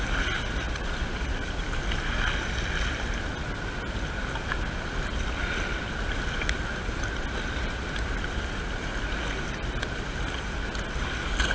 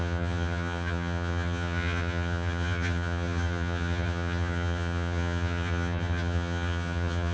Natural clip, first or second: first